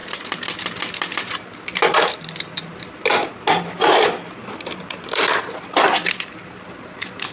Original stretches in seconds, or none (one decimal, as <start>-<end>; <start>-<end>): 0.0-4.4